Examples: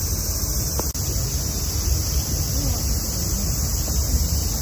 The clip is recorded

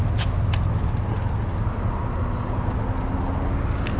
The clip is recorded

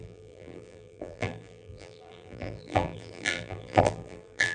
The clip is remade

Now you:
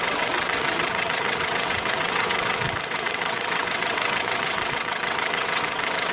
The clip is remade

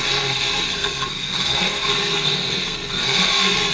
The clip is remade